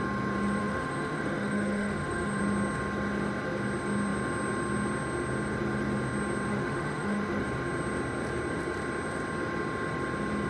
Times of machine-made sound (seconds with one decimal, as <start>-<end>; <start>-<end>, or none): 0.6-2.4; 6.5-7.4